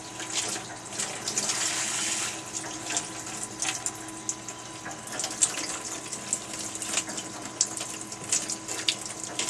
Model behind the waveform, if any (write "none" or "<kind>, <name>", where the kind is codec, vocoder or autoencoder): none